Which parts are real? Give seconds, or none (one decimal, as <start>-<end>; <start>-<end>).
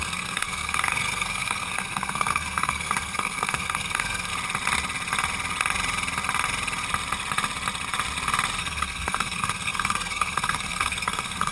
4.3-8.6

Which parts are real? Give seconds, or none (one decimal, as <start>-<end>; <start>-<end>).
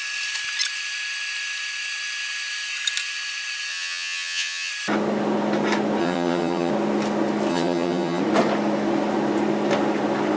0.0-3.7; 4.7-6.0; 6.7-7.5; 8.2-10.4